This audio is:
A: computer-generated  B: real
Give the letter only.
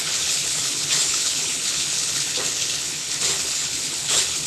A